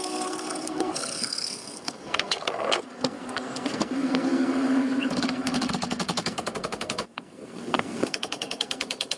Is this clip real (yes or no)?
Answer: no